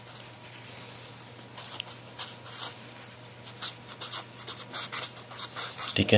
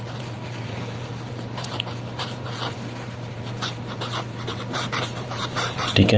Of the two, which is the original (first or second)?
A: first